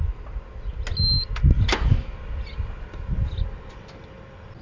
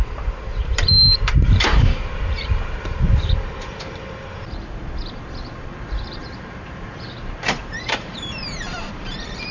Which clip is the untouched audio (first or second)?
first